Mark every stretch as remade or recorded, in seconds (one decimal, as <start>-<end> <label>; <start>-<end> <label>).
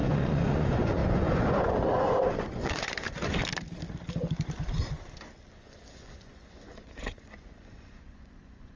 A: 0.0-3.4 remade; 3.4-5.5 recorded; 5.5-8.8 remade